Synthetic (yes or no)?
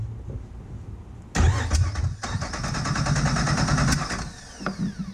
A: no